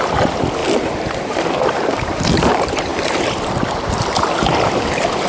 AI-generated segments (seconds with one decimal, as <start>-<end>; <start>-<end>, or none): 0.0-5.3